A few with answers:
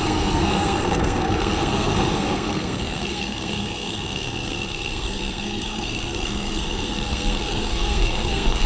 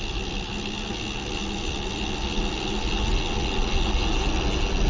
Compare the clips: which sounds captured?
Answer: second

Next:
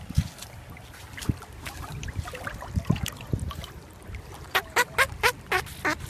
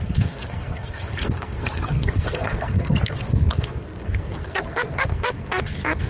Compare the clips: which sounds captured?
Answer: first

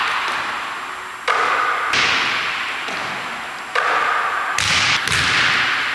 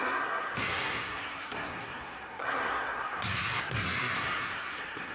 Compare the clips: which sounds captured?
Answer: first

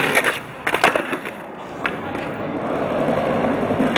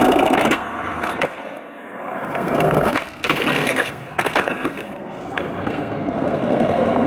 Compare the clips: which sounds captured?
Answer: first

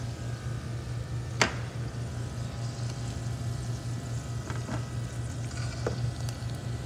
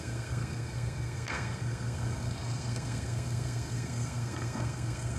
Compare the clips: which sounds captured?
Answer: first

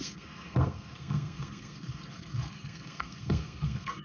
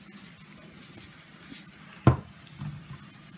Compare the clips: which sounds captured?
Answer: second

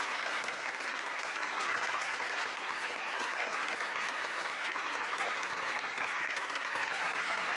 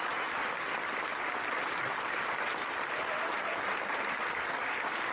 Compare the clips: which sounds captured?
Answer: second